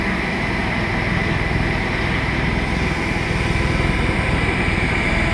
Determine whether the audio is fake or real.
fake